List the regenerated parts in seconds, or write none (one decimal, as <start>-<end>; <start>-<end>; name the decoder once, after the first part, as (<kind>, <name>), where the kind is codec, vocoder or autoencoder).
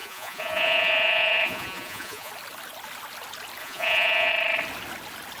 0.0-2.3 (vocoder, Vocos); 3.6-4.3